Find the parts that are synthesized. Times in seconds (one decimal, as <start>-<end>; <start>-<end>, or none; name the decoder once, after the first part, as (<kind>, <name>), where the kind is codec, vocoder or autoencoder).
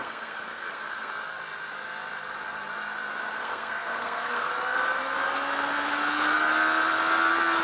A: 0.0-1.1 (codec, SNAC); 3.4-4.5